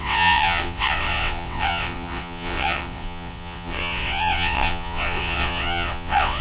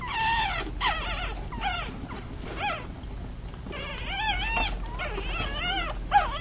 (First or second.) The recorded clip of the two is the second